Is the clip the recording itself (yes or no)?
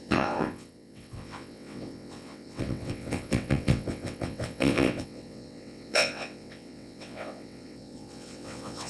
no